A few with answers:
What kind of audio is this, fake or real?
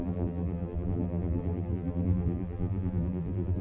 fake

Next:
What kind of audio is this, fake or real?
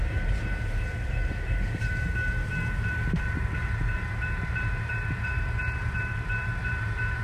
fake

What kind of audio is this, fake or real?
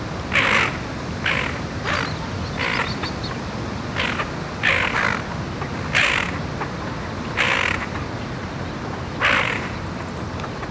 real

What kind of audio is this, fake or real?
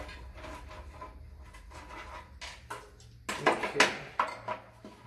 real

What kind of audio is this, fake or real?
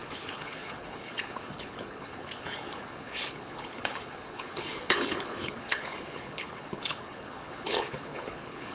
fake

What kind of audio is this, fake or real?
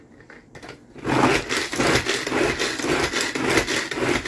real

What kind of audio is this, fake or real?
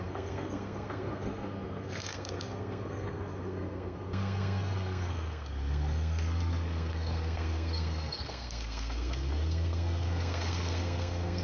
fake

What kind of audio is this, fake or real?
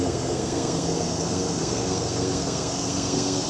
fake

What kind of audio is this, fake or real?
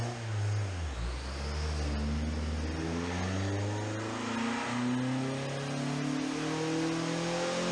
real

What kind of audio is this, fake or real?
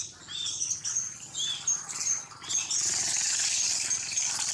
fake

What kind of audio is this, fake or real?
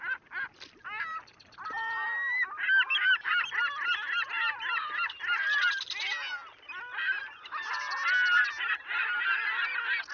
real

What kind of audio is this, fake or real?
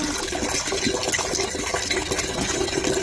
real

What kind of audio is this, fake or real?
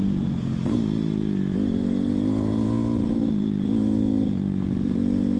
real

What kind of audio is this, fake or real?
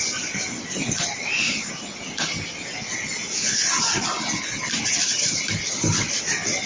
real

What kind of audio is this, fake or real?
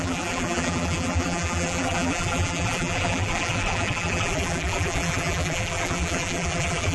fake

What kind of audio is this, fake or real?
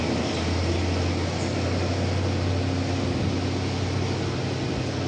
real